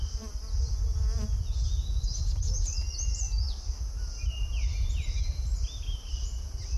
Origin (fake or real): real